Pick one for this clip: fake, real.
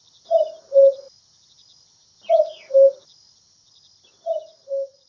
real